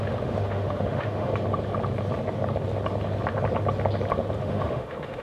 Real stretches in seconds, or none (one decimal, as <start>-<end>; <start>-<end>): 1.3-4.4